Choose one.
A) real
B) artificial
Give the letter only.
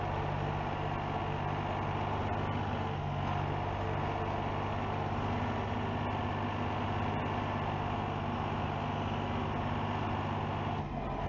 A